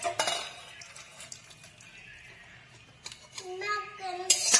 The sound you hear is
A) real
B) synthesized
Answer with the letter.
A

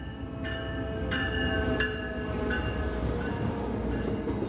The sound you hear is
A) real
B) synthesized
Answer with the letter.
A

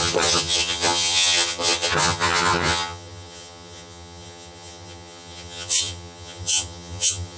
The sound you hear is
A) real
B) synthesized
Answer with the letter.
B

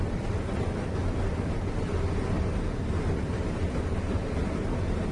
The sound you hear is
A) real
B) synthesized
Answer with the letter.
B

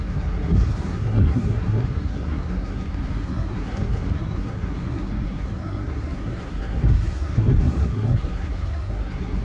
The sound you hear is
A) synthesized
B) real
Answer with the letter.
A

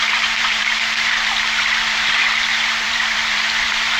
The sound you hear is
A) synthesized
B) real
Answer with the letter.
A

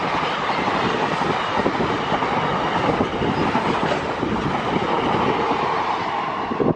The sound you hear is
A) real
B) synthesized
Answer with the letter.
A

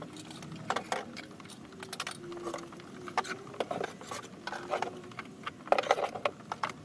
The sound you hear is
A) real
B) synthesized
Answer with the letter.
A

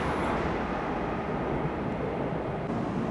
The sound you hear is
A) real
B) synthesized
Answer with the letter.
A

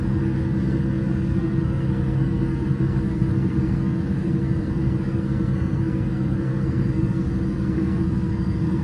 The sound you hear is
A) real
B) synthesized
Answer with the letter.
B